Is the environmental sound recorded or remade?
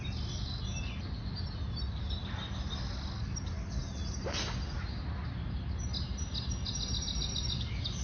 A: recorded